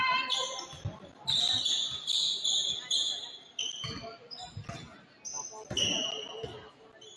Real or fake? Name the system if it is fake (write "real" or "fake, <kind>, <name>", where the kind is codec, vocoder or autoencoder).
real